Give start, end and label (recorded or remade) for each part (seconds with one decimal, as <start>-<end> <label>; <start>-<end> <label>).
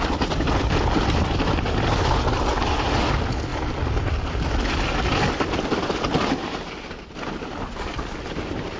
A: 0.0-8.8 recorded